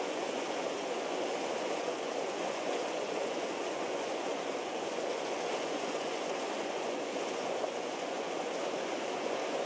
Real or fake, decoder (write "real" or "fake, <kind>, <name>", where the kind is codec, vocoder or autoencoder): fake, vocoder, Vocos